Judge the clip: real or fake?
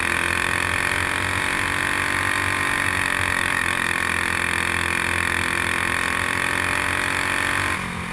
real